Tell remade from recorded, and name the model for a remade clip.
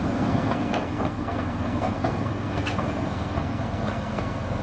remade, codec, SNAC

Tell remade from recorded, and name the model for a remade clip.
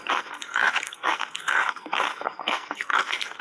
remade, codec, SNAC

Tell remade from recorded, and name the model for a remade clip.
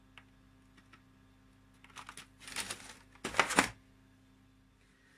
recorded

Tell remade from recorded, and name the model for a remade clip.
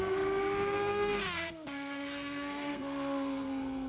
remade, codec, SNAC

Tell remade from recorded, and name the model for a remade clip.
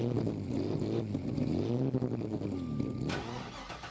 recorded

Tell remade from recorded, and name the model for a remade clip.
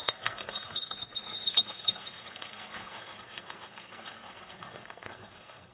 remade, codec, SNAC